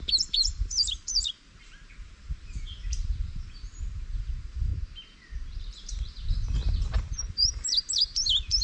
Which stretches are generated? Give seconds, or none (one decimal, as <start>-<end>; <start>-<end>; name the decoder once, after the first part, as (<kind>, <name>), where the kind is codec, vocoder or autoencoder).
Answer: 0.0-4.7 (vocoder, BigVGAN v2); 5.7-8.6